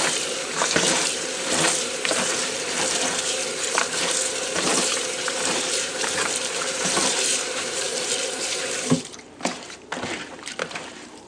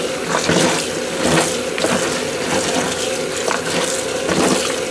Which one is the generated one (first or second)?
first